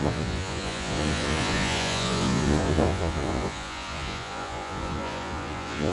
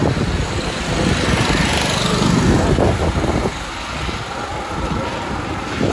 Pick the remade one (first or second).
first